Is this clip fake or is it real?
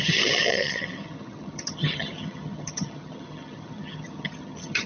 fake